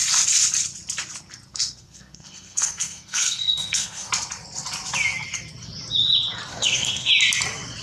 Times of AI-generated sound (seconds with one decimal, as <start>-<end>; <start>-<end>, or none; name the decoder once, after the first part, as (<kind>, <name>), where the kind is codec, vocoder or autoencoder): 1.5-4.1 (codec, SNAC); 6.5-7.1